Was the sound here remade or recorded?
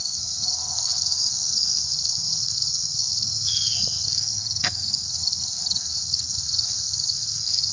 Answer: remade